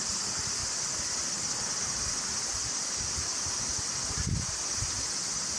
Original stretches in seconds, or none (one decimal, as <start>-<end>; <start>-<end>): 0.0-5.6